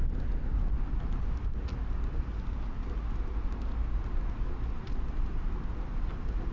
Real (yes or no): yes